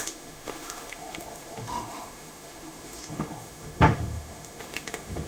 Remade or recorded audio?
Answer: remade